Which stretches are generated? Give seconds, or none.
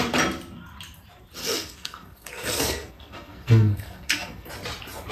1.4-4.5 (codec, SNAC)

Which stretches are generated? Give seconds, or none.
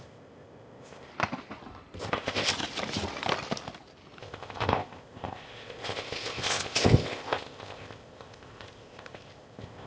0.0-1.1 (codec, ZipCodec); 2.0-2.5; 4.2-9.9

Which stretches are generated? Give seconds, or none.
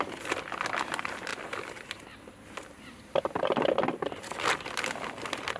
none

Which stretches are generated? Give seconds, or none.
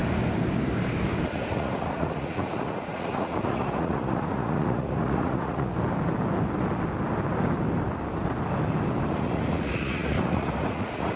1.3-5.7 (vocoder, Vocos); 9.1-11.2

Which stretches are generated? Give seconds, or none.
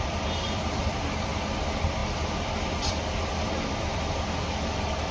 none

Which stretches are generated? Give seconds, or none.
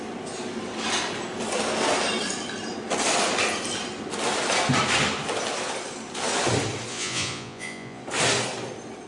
6.9-8.0 (vocoder, Vocos)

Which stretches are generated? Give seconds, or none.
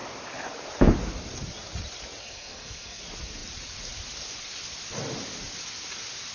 2.2-3.0 (codec, SNAC)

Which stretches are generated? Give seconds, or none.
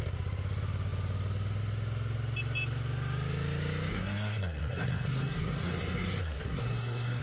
3.9-7.2 (codec, SNAC)